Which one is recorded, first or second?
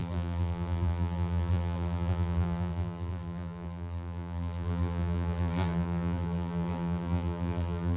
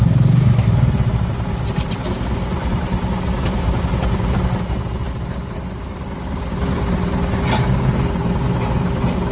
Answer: second